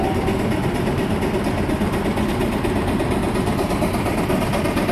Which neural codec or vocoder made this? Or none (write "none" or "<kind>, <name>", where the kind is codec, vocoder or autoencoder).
none